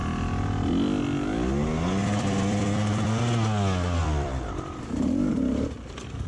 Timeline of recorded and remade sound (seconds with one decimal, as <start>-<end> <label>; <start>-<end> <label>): 0.0-2.0 recorded; 2.0-3.2 remade; 3.2-4.0 recorded; 4.0-6.3 remade